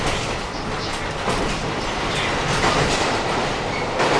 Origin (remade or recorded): remade